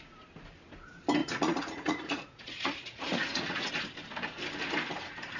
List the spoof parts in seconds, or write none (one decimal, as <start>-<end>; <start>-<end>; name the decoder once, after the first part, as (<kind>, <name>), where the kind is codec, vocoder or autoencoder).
1.2-3.7 (vocoder, Vocos)